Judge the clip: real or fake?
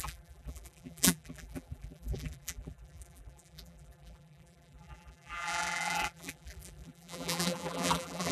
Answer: fake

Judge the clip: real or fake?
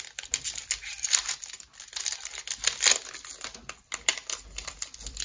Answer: real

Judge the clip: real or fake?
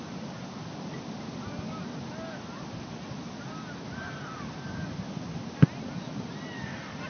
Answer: real